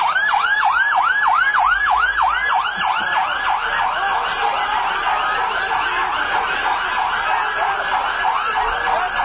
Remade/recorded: recorded